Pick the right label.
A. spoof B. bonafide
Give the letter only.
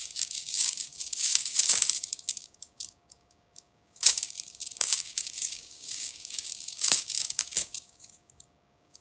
A